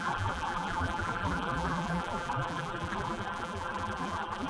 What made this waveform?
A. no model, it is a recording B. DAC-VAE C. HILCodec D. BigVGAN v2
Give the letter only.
D